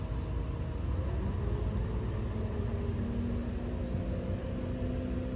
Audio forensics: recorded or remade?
recorded